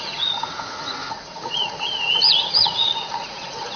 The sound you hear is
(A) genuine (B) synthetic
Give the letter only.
B